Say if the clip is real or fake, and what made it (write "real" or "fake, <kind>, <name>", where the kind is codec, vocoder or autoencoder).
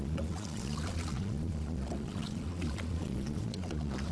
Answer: fake, vocoder, Vocos